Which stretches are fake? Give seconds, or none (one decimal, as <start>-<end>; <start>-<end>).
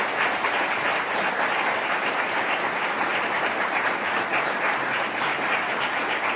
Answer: 3.1-6.0